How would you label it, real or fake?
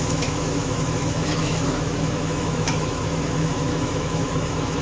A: fake